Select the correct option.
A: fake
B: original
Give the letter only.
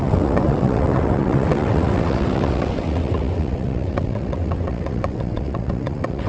A